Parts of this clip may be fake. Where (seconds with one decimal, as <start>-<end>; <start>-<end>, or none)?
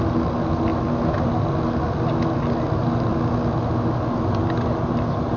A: none